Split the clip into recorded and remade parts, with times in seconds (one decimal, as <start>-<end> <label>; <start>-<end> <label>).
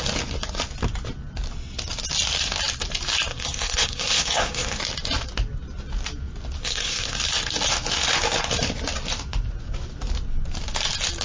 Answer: 0.0-3.3 recorded; 3.3-4.8 remade; 4.8-6.6 recorded; 6.6-7.2 remade; 7.2-11.2 recorded